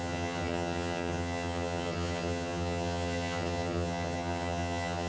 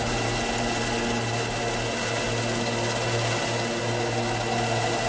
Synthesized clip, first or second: first